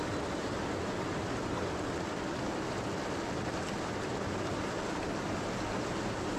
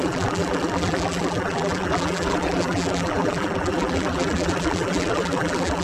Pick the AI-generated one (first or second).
second